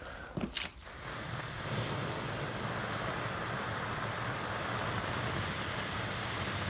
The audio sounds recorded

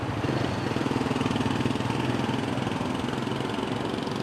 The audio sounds recorded